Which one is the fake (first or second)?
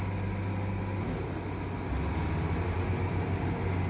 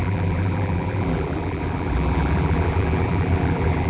second